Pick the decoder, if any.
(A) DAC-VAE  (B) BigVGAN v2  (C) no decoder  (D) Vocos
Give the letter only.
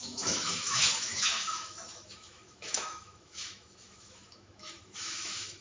A